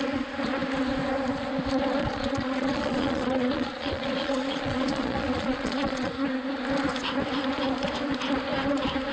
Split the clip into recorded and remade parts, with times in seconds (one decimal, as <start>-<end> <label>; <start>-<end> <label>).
0.0-2.0 recorded; 2.0-6.1 remade; 6.1-9.1 recorded